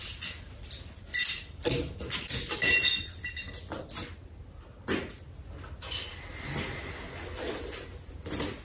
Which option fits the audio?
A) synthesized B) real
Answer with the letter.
B